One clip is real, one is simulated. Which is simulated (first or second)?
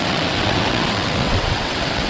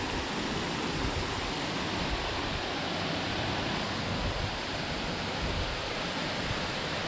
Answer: first